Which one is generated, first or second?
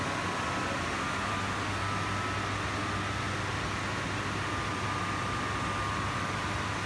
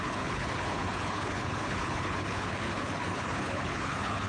second